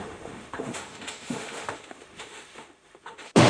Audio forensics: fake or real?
fake